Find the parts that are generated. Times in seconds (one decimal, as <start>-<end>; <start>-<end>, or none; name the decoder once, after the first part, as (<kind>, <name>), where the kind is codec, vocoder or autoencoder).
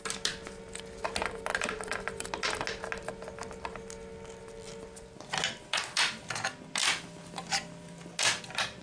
none